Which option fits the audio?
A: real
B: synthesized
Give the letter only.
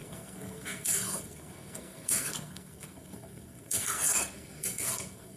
B